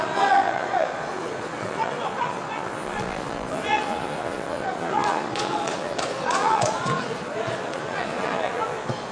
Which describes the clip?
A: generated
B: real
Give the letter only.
A